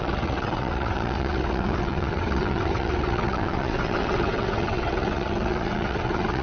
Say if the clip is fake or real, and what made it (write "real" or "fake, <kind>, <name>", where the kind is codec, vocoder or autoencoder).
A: fake, vocoder, WaveNeXt